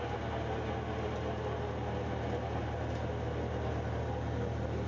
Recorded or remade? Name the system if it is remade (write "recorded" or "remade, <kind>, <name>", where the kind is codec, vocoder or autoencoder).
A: recorded